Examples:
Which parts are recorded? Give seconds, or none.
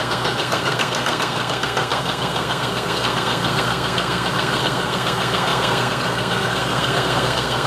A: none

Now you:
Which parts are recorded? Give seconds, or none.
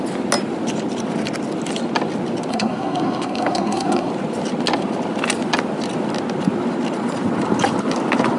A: 0.0-2.5; 4.1-8.4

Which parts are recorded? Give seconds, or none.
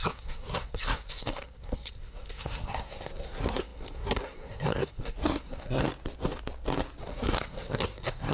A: 5.8-7.0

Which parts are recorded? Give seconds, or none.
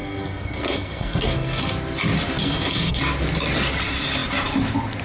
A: 1.7-2.4; 3.0-5.0